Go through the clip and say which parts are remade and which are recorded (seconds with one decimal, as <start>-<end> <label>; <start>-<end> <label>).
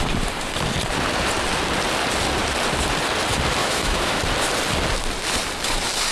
0.0-3.6 recorded; 3.6-4.2 remade; 4.2-6.1 recorded